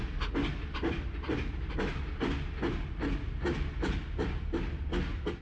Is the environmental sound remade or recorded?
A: recorded